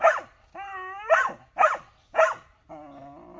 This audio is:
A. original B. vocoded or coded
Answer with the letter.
A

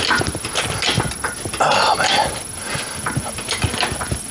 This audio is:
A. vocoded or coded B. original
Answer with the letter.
B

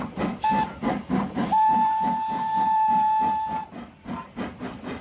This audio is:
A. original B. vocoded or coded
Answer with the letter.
A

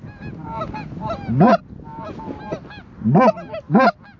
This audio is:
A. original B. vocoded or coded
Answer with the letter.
A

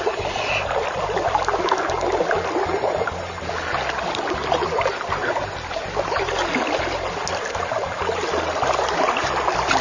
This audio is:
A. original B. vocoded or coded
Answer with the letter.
A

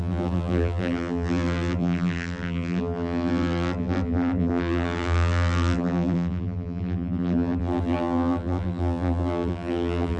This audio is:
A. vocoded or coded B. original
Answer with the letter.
A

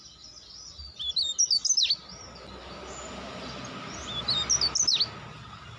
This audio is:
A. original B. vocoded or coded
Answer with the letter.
A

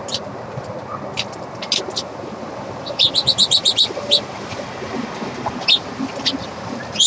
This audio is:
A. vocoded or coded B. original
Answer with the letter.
B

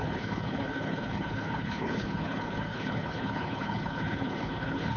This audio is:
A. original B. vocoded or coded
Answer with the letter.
B